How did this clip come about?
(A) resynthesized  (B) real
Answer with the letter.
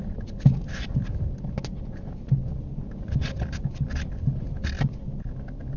B